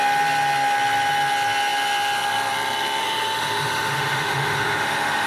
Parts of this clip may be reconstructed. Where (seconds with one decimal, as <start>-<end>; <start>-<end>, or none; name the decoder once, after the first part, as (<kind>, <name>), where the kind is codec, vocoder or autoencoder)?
3.0-5.3 (autoencoder, DAC-VAE)